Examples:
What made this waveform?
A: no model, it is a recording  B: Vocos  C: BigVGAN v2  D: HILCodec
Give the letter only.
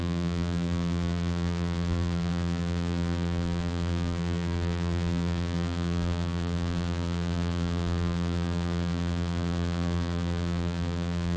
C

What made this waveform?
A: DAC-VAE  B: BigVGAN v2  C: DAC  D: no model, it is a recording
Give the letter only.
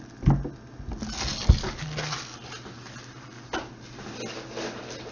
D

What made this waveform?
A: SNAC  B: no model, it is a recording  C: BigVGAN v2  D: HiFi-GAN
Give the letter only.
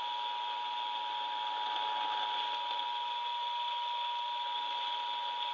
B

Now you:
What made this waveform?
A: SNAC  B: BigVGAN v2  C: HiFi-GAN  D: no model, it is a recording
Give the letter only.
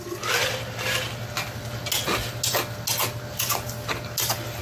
D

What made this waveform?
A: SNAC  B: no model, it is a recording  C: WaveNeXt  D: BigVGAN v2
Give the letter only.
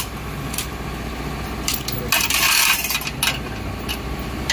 B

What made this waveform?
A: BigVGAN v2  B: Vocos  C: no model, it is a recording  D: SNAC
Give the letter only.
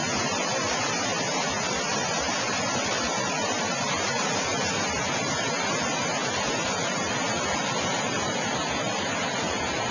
A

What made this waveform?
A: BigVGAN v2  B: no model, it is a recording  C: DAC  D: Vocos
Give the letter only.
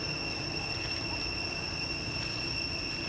B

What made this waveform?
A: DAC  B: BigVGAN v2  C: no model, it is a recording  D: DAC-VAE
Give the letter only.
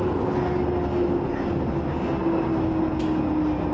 C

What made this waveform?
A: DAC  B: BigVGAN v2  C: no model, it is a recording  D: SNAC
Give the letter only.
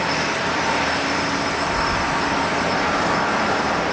B